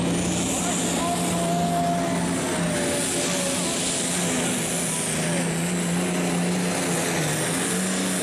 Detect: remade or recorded recorded